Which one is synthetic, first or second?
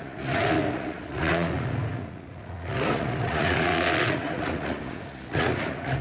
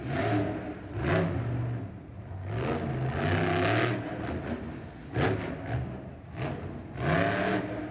first